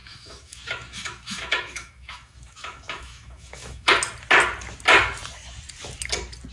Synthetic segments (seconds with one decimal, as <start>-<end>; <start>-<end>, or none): 0.0-3.9